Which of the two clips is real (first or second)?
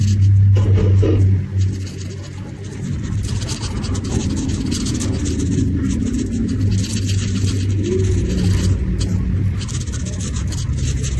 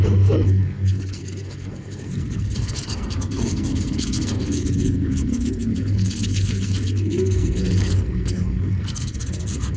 first